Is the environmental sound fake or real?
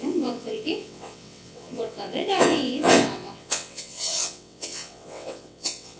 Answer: fake